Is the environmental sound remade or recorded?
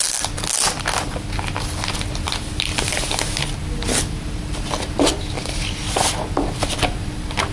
recorded